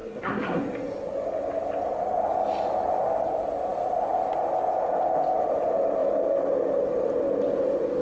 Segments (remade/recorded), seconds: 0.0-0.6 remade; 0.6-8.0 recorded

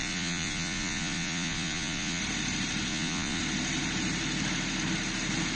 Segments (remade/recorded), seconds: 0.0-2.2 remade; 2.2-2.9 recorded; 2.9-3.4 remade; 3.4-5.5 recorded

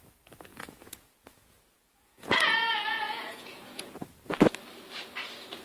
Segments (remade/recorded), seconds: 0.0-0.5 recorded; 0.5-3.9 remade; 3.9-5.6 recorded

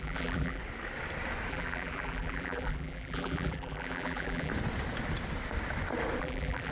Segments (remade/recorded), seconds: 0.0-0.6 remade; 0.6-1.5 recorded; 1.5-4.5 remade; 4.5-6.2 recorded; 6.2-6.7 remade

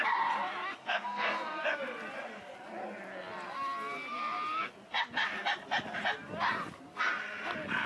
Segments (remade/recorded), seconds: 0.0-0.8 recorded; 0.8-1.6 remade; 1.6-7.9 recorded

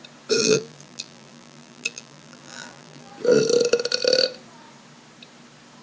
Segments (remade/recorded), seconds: 0.0-0.4 recorded; 0.4-3.1 remade; 3.1-5.8 recorded

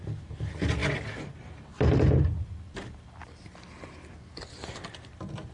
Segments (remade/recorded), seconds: 0.0-5.5 recorded